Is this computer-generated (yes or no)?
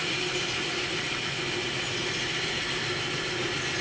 no